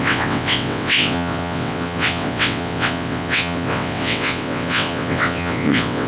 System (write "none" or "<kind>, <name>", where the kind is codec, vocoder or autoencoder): vocoder, WaveNeXt